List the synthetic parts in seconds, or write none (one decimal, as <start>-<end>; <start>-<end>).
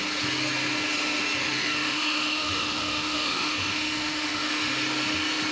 1.4-4.7